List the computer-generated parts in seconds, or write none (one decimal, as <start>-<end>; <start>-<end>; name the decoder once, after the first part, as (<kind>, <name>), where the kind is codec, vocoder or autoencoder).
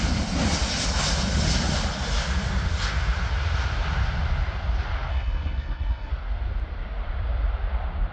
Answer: 5.1-6.1 (codec, SNAC)